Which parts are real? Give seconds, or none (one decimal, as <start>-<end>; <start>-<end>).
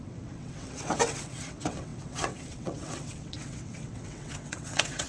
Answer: none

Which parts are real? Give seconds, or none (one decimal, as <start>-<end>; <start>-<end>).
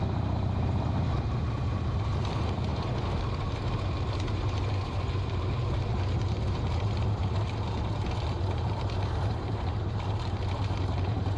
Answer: none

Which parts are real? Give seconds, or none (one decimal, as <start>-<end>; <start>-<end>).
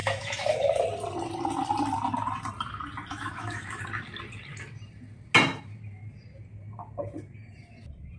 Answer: 0.8-3.1; 3.8-8.2